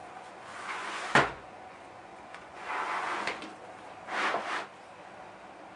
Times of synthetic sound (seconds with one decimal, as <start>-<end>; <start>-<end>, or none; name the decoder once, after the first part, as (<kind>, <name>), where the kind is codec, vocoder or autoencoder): 0.0-3.4 (vocoder, Vocos)